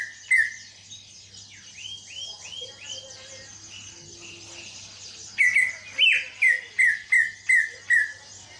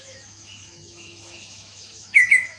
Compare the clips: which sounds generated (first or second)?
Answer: second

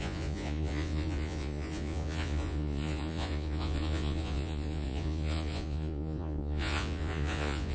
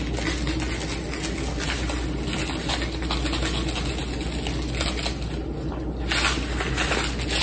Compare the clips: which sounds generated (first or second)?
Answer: first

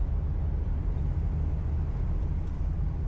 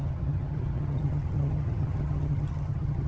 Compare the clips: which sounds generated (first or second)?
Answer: second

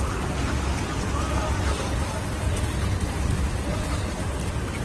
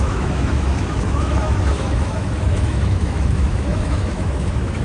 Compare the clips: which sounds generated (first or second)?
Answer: second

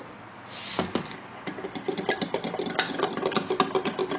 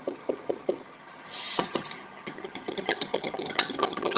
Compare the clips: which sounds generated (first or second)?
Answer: second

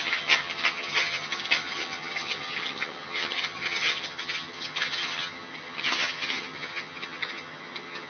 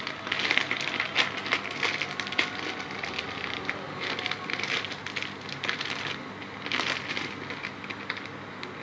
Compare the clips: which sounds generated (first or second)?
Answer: first